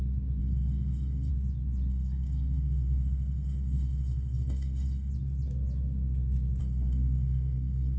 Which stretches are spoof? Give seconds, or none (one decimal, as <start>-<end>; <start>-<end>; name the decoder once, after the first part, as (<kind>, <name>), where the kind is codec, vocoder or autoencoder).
0.4-1.3 (codec, SNAC); 1.9-5.1; 6.6-8.0